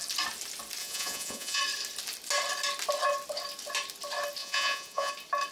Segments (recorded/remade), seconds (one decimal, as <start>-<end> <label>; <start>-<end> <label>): 0.0-0.8 recorded; 0.8-1.6 remade; 1.6-4.4 recorded; 4.4-5.1 remade; 5.1-5.5 recorded